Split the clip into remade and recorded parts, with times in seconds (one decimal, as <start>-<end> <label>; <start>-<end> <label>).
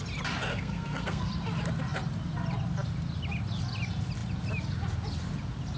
0.0-0.5 recorded; 0.5-1.3 remade; 1.3-5.8 recorded